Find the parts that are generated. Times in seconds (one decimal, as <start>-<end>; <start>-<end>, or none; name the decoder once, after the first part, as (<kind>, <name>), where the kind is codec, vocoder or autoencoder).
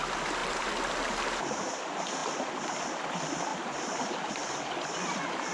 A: none